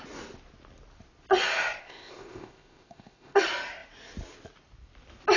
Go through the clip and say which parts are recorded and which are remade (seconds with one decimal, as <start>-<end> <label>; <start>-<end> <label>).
0.0-1.8 recorded; 1.8-3.4 remade; 3.4-5.4 recorded